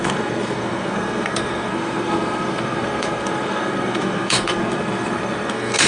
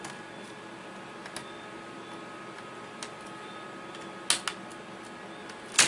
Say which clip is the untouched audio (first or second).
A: second